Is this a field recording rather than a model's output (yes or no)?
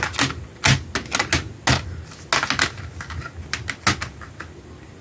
yes